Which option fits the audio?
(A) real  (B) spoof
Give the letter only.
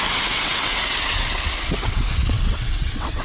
B